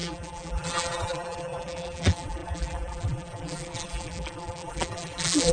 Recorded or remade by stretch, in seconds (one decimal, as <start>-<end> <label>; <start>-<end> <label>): 0.0-5.5 remade

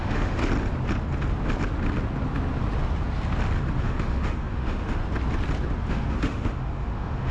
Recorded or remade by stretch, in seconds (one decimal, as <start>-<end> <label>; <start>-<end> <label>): 0.0-0.4 remade; 0.4-3.8 recorded; 3.8-5.0 remade; 5.0-5.9 recorded; 5.9-7.3 remade

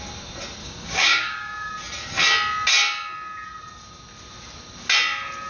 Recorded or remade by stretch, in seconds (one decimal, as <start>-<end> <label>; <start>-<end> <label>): 0.0-0.6 recorded; 0.6-1.7 remade; 1.7-5.5 recorded

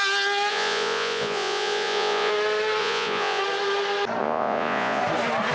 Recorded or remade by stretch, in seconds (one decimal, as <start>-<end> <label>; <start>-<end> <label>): 0.0-0.5 recorded; 0.5-2.3 remade; 2.3-2.8 recorded; 2.8-3.4 remade; 3.4-4.2 recorded; 4.2-5.0 remade; 5.0-5.5 recorded

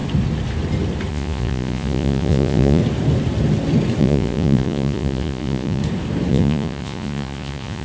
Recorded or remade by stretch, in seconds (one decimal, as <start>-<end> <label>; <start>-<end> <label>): 0.0-1.1 recorded; 1.1-2.8 remade; 2.8-4.0 recorded; 4.0-5.8 remade; 5.8-6.3 recorded; 6.3-7.8 remade

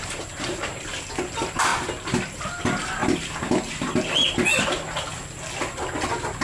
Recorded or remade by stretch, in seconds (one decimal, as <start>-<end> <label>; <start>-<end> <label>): 0.0-6.4 recorded

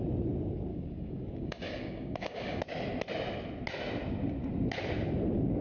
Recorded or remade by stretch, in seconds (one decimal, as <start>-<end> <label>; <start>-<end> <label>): 0.0-0.7 recorded; 0.7-2.6 remade; 2.6-5.6 recorded

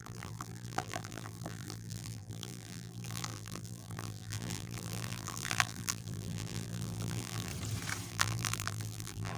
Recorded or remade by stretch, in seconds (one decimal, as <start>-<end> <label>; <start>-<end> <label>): 0.0-7.5 remade; 7.5-8.1 recorded; 8.1-9.4 remade